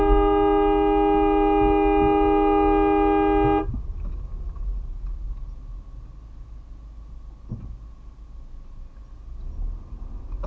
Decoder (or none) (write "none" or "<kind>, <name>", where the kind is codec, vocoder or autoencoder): none